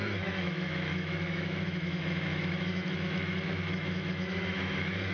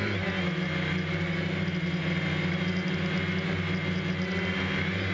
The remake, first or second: first